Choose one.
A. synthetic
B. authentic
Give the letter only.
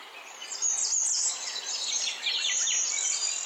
B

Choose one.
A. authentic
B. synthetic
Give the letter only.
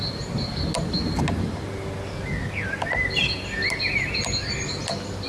A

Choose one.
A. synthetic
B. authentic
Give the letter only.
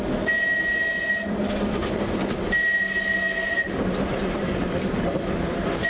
B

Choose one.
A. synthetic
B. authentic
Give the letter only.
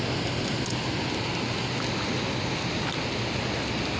B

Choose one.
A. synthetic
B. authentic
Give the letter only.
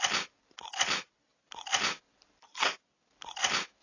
B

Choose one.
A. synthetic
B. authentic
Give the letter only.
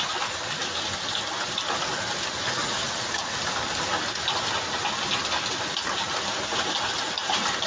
B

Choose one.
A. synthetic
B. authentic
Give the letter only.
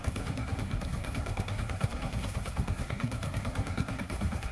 A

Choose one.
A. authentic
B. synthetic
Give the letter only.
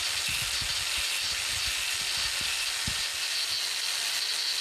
A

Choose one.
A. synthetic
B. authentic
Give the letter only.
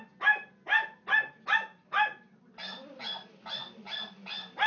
B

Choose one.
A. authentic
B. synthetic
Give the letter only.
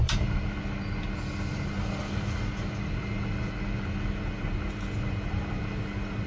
A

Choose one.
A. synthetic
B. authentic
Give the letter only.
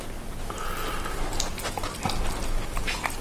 B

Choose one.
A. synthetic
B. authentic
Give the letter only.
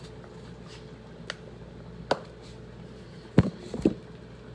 B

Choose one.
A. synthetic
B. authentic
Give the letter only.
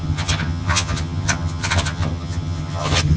A